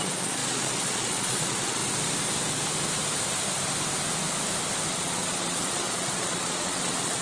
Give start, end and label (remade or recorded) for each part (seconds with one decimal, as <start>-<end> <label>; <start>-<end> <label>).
0.0-1.8 remade; 1.8-4.9 recorded; 4.9-7.2 remade